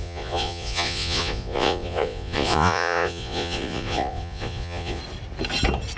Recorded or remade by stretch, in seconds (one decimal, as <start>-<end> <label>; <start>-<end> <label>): 0.0-5.0 remade; 5.0-6.0 recorded